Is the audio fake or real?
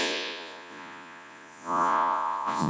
fake